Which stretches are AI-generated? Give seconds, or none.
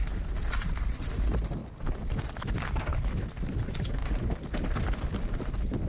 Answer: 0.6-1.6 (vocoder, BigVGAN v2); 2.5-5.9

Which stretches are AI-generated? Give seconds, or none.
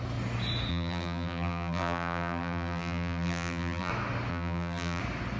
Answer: 0.7-3.9 (vocoder, BigVGAN v2); 4.3-5.0